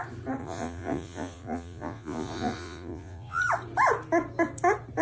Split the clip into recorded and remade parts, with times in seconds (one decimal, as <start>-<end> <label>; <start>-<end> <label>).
0.0-0.4 recorded; 0.4-3.4 remade; 3.4-5.0 recorded